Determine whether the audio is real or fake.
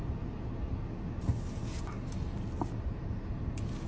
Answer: real